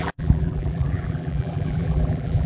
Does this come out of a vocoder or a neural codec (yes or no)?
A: yes